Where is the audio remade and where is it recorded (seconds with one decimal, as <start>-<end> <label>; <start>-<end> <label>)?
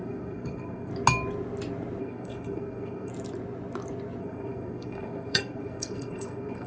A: 0.0-0.9 remade; 0.9-2.0 recorded; 2.0-3.1 remade; 3.1-4.2 recorded; 4.2-6.7 remade